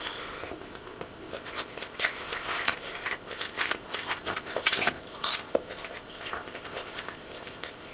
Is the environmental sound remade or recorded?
remade